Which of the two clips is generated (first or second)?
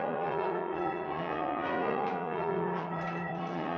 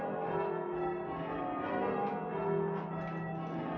first